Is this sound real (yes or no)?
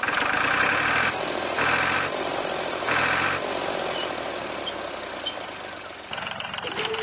no